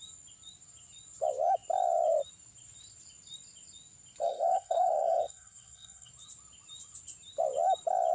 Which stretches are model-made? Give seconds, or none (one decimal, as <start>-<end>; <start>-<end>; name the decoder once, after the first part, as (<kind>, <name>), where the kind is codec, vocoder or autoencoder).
4.2-6.1 (codec, SNAC)